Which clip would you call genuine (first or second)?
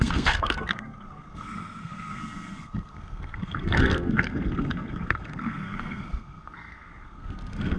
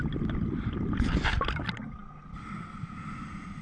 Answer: second